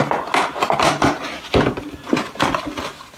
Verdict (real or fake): real